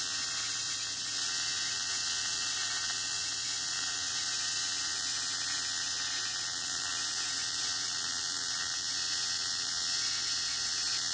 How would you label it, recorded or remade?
remade